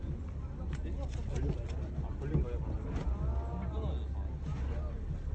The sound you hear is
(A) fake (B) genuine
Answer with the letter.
B